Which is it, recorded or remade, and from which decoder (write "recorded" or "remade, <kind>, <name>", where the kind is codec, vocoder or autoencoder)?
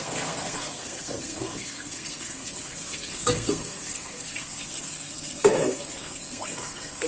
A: remade, codec, SNAC